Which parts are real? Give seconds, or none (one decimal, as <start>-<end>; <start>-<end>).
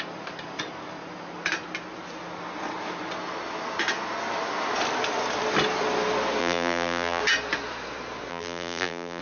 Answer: 0.0-6.4; 7.2-8.3